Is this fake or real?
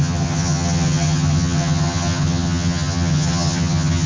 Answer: fake